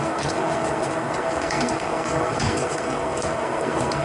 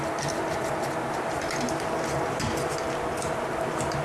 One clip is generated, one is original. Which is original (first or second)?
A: second